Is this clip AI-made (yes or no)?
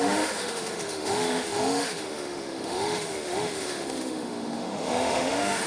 yes